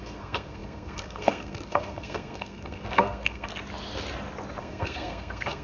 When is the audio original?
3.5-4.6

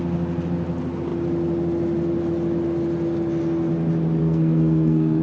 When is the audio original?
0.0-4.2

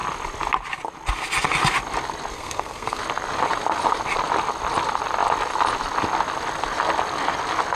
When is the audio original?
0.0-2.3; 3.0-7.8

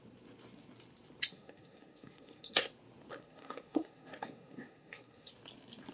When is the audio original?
0.0-1.3; 2.7-3.1; 5.3-5.9

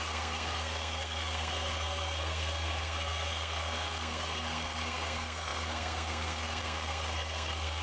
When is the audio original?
none